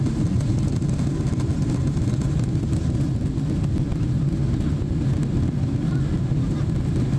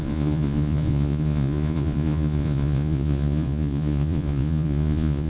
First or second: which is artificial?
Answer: second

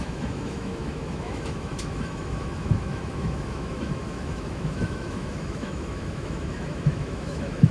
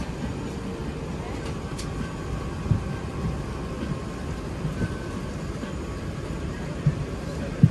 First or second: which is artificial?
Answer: first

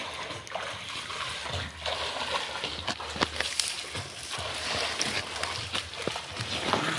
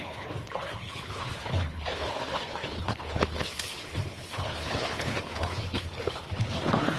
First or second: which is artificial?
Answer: second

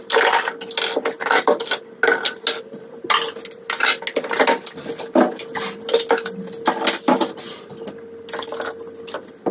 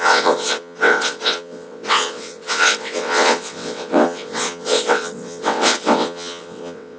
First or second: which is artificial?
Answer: second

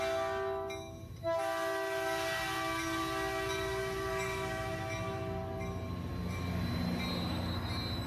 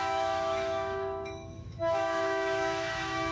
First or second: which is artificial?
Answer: second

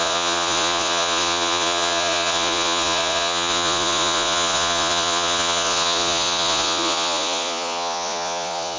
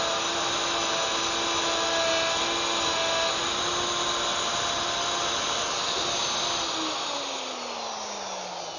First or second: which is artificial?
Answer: first